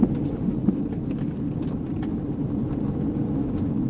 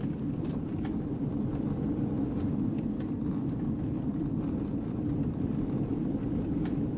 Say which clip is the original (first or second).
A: first